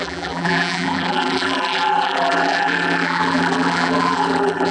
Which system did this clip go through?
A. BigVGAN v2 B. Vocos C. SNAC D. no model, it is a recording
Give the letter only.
A